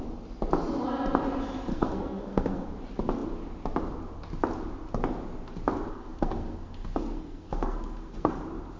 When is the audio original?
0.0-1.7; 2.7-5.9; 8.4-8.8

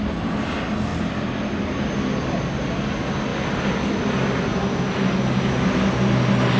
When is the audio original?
0.0-6.6

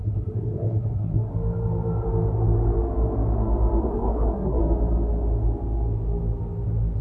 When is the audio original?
1.3-3.8; 4.6-7.0